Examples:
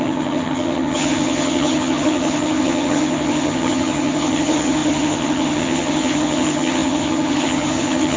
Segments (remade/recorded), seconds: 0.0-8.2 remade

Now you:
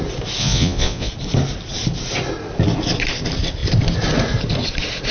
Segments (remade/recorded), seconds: 0.0-0.4 recorded; 0.4-1.1 remade; 1.1-5.1 recorded

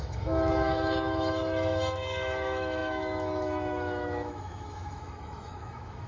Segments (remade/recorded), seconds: 0.0-6.1 remade

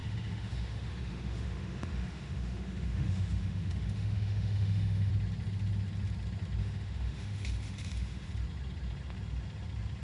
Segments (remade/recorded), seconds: 0.0-5.1 remade; 5.1-6.6 recorded; 6.6-8.3 remade; 8.3-10.0 recorded

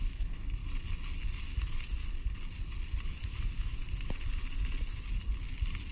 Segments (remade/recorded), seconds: 0.0-0.6 remade; 0.6-3.2 recorded; 3.2-3.8 remade; 3.8-5.9 recorded

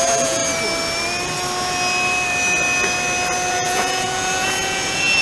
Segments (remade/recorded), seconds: 0.0-0.4 remade; 0.4-3.5 recorded; 3.5-5.2 remade

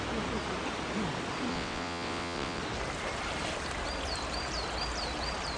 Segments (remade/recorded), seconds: 0.0-1.5 recorded; 1.5-2.6 remade; 2.6-5.6 recorded